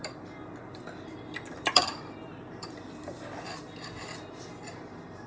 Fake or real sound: real